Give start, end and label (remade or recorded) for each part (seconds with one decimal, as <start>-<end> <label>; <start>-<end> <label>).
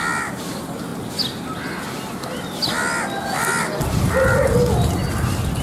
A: 0.0-5.6 recorded